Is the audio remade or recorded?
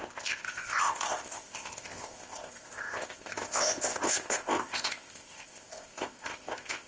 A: remade